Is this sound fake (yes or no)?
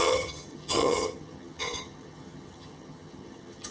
yes